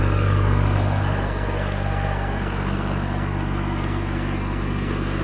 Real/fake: fake